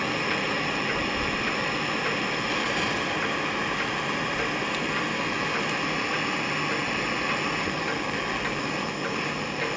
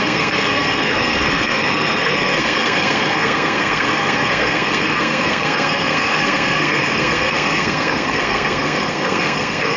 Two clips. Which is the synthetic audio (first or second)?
second